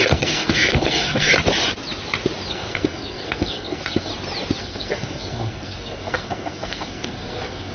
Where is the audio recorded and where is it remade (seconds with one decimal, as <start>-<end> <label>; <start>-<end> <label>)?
0.0-1.3 remade; 1.3-2.5 recorded; 2.5-4.1 remade; 4.1-4.6 recorded; 4.6-7.7 remade